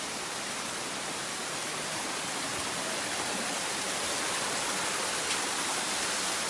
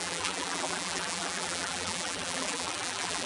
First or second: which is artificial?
second